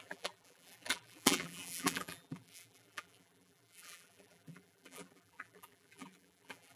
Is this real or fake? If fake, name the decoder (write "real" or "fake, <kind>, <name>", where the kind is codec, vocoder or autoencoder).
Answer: fake, vocoder, BigVGAN v2